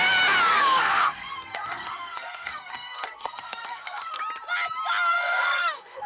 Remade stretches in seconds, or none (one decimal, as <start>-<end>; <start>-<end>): 0.5-4.2; 5.1-6.1